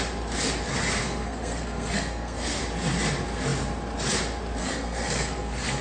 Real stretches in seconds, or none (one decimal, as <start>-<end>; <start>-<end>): 0.0-1.0; 2.6-4.6